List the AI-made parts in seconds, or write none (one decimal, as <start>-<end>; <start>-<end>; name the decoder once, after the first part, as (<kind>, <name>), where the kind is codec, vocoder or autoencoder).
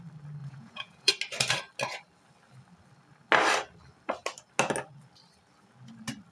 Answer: 0.4-1.1 (vocoder, Vocos)